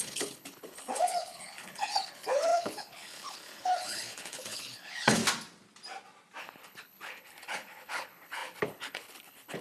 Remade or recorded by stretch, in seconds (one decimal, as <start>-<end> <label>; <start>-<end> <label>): 0.0-5.2 remade; 5.2-6.4 recorded; 6.4-9.6 remade